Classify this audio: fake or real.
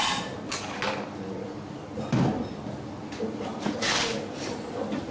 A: real